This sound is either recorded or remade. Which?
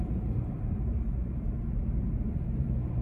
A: remade